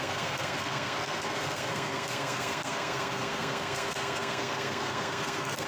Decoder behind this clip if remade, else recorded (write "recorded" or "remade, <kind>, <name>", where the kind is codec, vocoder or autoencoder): remade, codec, SNAC